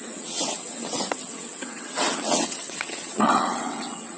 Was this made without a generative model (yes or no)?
no